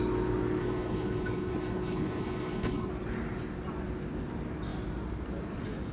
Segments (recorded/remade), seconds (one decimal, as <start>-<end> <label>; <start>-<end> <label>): 0.0-0.6 recorded; 0.6-2.9 remade; 2.9-5.9 recorded